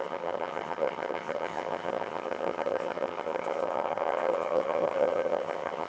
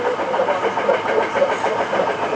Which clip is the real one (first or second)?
second